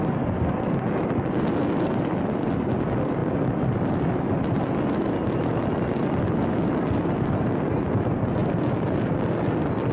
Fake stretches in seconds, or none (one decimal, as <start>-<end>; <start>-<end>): none